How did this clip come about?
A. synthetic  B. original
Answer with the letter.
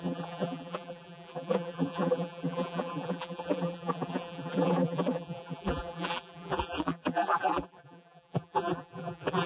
A